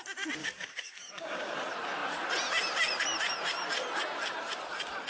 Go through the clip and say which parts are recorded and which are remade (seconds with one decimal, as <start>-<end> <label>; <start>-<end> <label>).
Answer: 0.0-0.4 recorded; 0.4-1.5 remade; 1.5-5.1 recorded

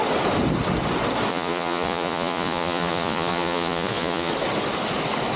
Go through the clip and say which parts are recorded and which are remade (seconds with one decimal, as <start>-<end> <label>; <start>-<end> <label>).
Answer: 0.0-1.3 recorded; 1.3-4.3 remade; 4.3-5.4 recorded